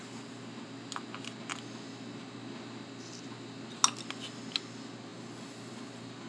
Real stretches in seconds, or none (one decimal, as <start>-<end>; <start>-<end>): 0.0-6.3